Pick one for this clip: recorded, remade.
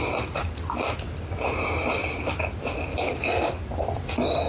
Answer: recorded